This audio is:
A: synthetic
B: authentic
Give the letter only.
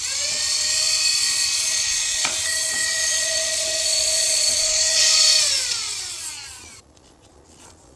A